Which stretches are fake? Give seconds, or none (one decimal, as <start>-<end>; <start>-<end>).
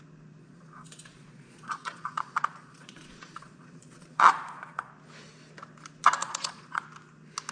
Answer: 0.4-4.9; 6.2-6.8